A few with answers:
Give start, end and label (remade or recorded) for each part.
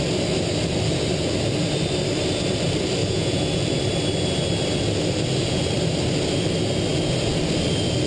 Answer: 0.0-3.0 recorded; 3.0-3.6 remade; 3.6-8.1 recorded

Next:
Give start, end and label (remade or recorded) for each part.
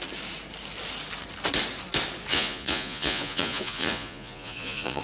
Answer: 0.0-2.3 recorded; 2.3-5.0 remade